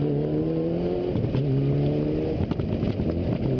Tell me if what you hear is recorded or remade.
recorded